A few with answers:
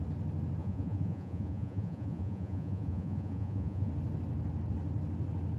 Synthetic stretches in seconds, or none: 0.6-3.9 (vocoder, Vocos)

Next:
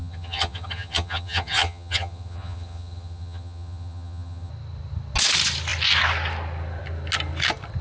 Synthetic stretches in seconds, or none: 0.0-4.5 (vocoder, HiFi-GAN)

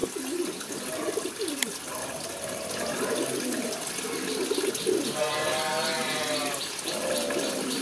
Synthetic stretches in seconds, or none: none